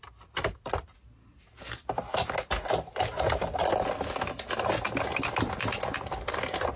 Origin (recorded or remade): recorded